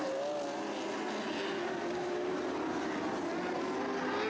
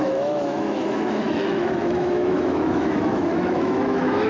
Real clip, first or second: first